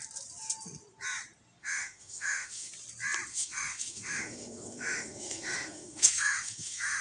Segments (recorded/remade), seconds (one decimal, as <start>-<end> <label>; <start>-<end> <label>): 0.0-1.6 recorded; 1.6-2.7 remade; 2.7-3.3 recorded; 3.3-7.0 remade